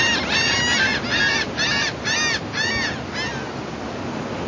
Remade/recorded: recorded